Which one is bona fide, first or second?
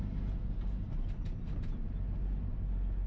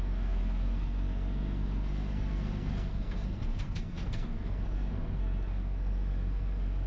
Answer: first